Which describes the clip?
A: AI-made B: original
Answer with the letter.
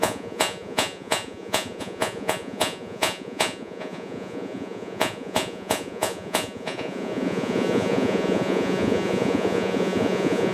A